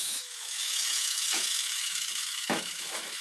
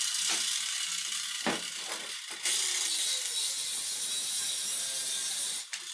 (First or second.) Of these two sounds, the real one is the second